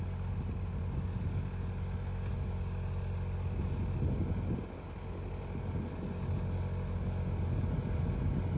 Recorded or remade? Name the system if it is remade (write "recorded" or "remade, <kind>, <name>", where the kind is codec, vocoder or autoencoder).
recorded